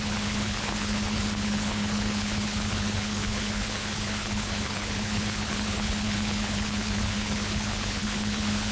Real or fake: fake